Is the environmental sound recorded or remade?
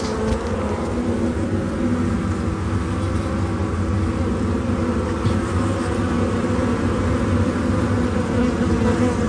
recorded